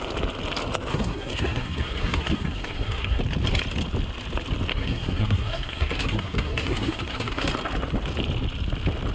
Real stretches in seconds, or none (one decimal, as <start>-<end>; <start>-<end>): 0.0-0.9; 3.2-4.7; 7.5-9.1